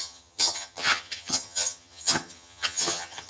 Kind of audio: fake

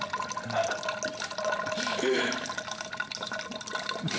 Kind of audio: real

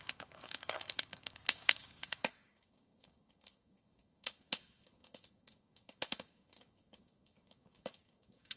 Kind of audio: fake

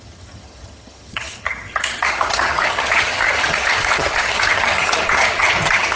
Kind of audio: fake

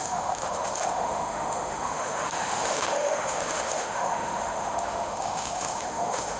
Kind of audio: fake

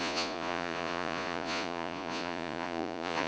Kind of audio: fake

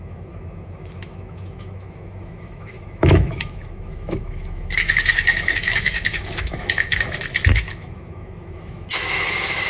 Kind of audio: fake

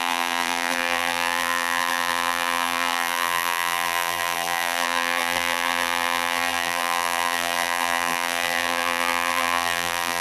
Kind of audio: fake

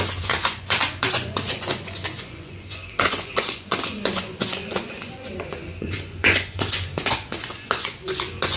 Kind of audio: fake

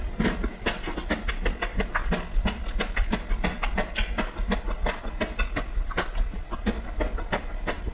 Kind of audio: real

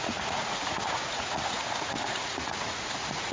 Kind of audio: fake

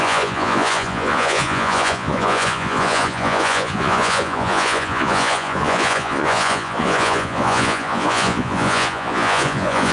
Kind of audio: fake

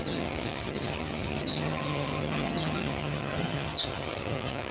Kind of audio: fake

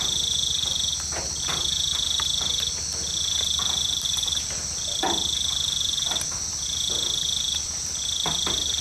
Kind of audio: fake